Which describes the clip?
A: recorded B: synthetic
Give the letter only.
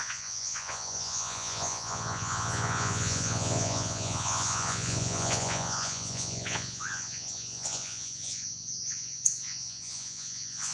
B